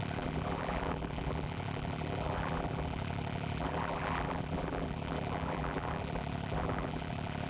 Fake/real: fake